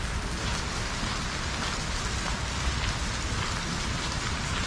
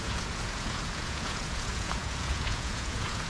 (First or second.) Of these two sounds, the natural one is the first